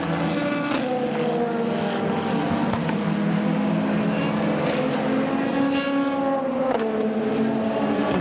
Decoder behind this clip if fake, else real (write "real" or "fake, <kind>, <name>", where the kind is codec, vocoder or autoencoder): real